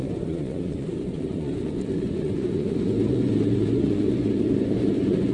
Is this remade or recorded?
remade